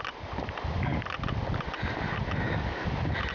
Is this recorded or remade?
recorded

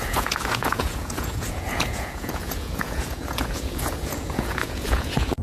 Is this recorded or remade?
remade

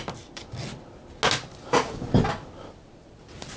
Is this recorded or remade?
recorded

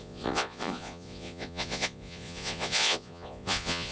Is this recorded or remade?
remade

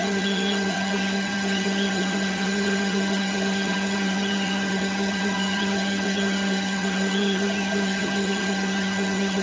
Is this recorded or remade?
remade